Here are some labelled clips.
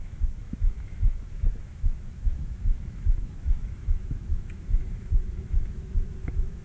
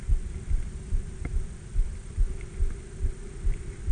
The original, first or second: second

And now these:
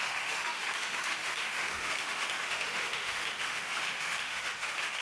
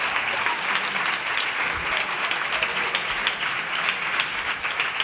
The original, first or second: second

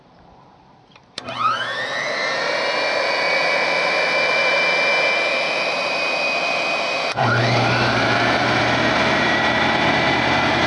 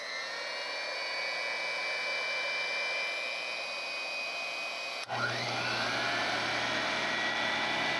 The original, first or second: second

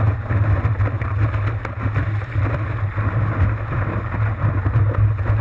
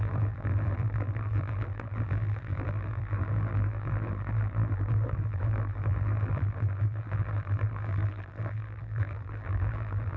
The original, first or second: first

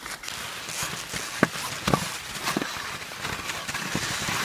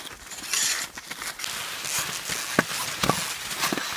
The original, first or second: second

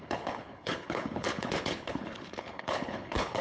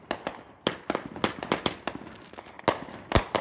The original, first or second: second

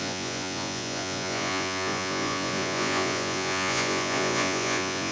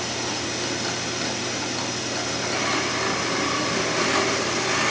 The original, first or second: second